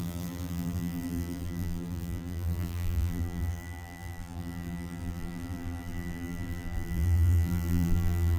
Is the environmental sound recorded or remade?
remade